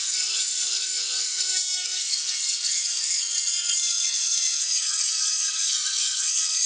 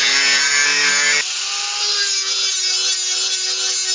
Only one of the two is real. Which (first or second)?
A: second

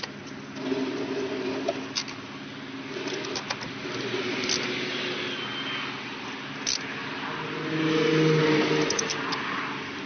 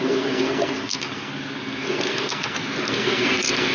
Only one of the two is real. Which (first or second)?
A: first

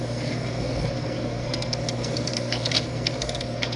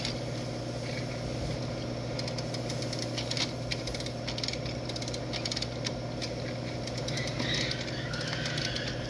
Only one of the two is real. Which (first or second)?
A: second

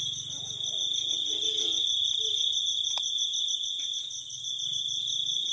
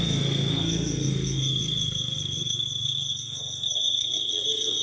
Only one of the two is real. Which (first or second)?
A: first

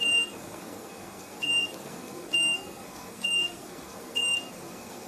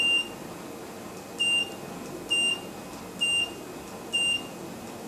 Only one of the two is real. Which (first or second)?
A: second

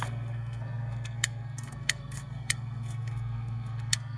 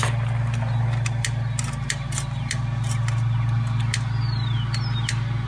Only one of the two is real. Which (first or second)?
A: second